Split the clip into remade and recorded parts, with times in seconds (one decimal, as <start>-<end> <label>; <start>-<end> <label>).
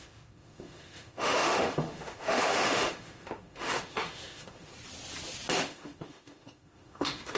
0.0-4.7 remade; 4.7-5.6 recorded; 5.6-7.4 remade